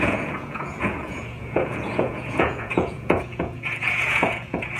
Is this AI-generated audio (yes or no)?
yes